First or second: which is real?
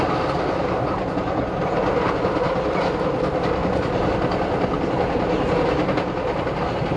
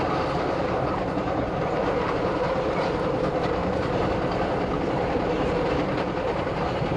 first